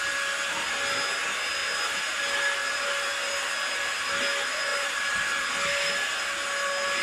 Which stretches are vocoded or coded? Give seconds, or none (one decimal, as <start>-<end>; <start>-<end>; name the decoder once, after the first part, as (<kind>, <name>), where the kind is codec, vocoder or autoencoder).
1.6-2.2 (vocoder, BigVGAN v2); 2.6-3.1; 4.7-5.5